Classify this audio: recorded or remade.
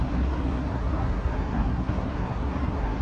remade